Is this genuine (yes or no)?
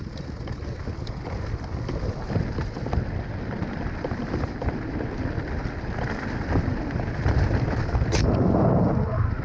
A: yes